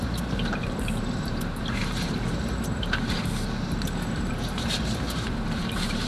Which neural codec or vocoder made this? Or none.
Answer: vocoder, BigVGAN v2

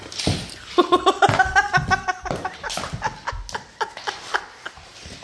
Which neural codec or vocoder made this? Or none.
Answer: none